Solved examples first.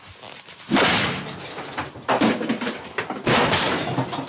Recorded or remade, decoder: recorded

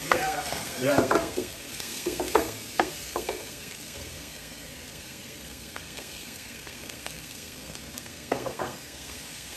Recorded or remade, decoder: remade, codec, SNAC